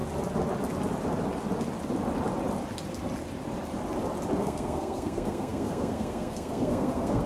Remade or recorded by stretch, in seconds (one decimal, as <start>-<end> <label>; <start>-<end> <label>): 0.0-4.4 recorded; 4.4-7.3 remade